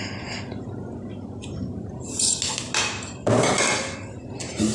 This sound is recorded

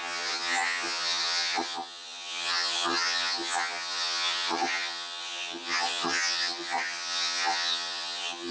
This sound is remade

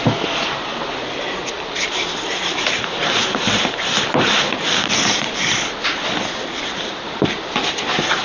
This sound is recorded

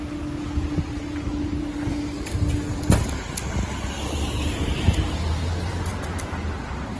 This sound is recorded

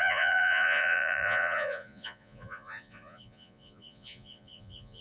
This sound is remade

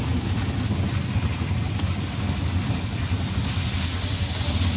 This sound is recorded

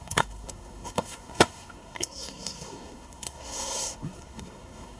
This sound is remade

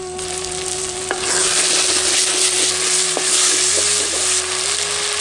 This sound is recorded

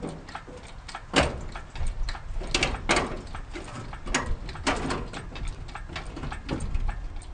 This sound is recorded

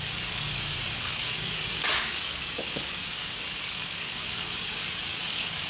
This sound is remade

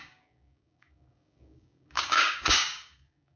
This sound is remade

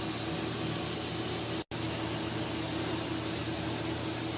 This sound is recorded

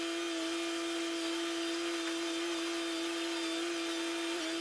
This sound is recorded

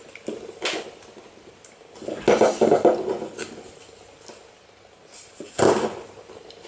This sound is recorded